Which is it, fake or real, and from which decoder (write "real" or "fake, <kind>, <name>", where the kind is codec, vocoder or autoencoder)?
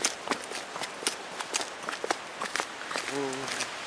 real